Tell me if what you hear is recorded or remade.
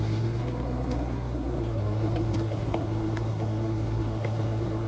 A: remade